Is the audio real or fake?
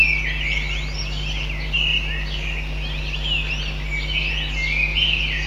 real